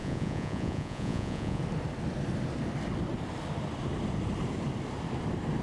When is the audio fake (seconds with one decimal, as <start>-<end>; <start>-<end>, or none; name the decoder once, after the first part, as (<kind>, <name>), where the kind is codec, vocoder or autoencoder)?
0.0-1.6 (vocoder, Vocos)